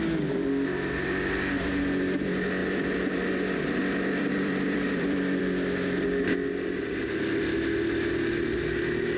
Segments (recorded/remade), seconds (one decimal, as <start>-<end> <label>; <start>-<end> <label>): 0.0-2.6 recorded; 2.6-5.4 remade; 5.4-9.2 recorded